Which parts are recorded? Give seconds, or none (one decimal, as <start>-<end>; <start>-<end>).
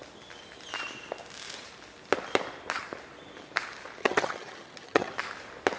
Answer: 0.0-4.0; 5.1-5.8